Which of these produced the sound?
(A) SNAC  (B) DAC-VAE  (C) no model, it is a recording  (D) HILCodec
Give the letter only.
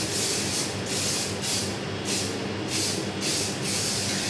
C